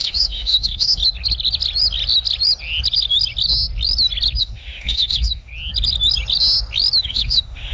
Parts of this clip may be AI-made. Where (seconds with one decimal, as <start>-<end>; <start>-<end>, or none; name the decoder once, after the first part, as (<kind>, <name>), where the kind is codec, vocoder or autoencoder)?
0.0-1.0 (autoencoder, DAC-VAE); 4.4-5.5; 7.0-7.7